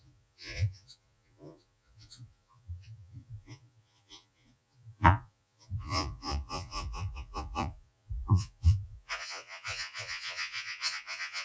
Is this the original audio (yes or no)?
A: no